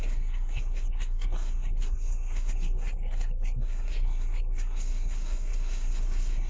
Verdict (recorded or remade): remade